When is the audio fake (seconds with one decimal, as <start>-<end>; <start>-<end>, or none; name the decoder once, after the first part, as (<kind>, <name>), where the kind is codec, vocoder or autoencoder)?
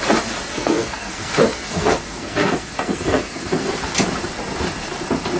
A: 0.5-3.7 (codec, SNAC)